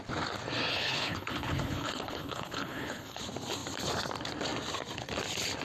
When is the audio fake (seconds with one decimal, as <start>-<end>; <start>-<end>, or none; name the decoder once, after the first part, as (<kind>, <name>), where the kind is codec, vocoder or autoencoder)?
0.7-3.2 (codec, HILCodec)